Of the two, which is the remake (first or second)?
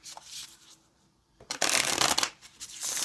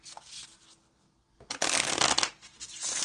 first